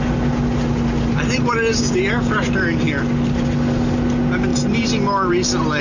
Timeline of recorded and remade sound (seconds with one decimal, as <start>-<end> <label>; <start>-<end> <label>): 0.0-5.8 recorded